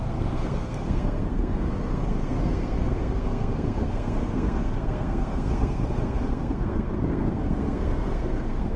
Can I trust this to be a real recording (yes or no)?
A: no